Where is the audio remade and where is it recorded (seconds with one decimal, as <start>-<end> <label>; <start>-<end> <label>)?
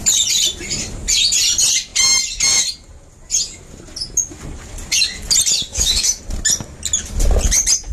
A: 0.0-5.7 recorded; 5.7-6.2 remade; 6.2-7.9 recorded